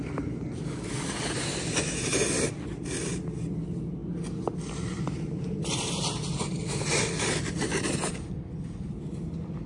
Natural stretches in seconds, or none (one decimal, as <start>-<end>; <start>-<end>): 0.0-9.7